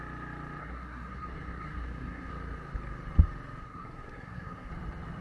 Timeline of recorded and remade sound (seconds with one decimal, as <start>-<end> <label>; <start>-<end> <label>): 0.0-0.6 recorded; 0.6-2.3 remade; 2.3-3.6 recorded; 3.6-4.7 remade; 4.7-5.2 recorded